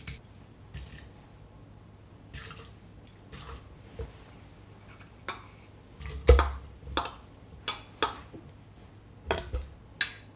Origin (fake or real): real